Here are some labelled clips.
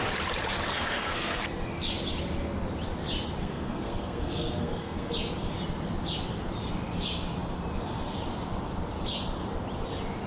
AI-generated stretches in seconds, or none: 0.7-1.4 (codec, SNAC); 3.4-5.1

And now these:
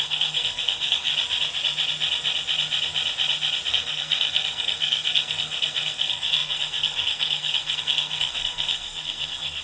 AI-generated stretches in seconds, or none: 0.0-1.1 (codec, SNAC); 3.7-9.6

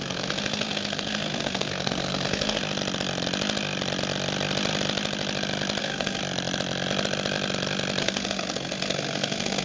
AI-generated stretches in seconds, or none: 0.0-2.6 (codec, SNAC); 5.8-6.2; 8.0-9.6

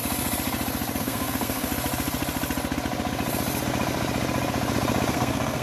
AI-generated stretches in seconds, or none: 1.0-1.7 (codec, SNAC); 5.1-5.6